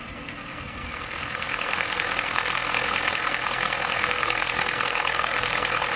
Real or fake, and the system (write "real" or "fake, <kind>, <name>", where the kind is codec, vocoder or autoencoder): fake, codec, SNAC